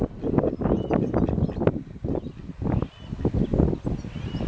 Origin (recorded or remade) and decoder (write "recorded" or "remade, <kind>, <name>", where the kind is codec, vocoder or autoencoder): recorded